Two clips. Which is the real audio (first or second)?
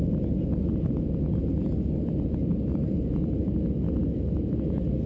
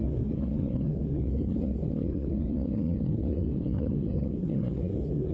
first